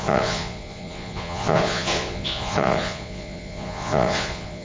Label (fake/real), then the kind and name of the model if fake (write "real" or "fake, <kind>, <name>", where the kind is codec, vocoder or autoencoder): fake, vocoder, Vocos